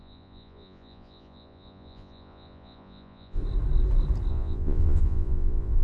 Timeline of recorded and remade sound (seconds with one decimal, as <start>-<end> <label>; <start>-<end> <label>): 0.0-3.4 remade; 3.4-4.3 recorded; 4.3-5.8 remade